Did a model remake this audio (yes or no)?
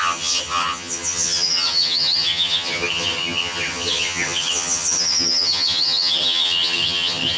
yes